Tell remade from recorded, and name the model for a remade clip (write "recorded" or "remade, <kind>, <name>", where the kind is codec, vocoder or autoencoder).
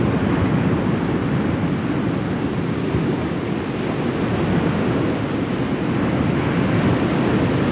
recorded